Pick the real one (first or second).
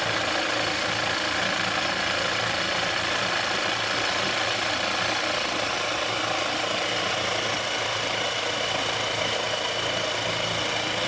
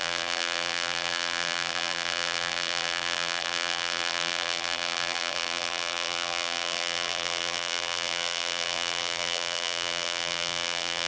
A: first